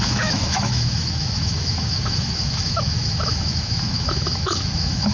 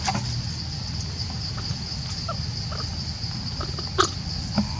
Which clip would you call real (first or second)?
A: second